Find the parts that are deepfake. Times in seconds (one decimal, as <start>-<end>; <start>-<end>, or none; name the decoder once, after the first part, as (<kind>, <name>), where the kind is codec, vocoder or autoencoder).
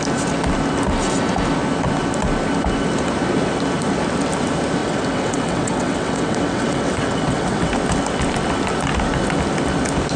4.8-7.7 (vocoder, WaveNeXt)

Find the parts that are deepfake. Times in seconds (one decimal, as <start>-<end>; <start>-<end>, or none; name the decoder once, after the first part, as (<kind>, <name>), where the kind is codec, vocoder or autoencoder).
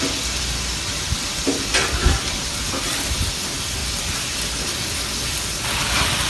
none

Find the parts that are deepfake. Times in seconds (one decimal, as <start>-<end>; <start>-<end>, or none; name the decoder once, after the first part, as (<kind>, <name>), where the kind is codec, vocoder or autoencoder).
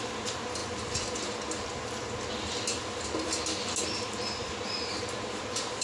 0.0-0.6 (vocoder, BigVGAN v2); 4.1-5.8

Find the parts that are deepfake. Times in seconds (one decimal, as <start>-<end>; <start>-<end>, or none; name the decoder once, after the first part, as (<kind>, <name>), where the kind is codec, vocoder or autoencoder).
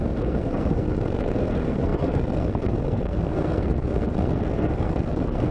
0.0-5.5 (codec, SNAC)